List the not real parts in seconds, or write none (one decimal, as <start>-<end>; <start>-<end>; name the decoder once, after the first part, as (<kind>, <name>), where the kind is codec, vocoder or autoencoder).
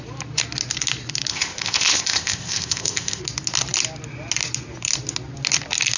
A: 1.3-3.2 (codec, ZipCodec)